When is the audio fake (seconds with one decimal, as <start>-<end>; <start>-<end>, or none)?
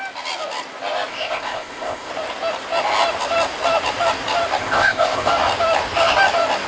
1.1-2.1; 4.6-5.3